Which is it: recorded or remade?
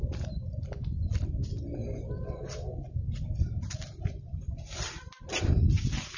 recorded